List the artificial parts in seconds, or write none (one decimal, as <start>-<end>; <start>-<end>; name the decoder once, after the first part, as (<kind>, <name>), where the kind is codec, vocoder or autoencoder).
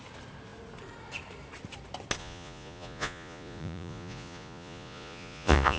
2.2-5.8 (vocoder, Vocos)